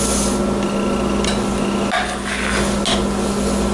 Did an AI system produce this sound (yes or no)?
no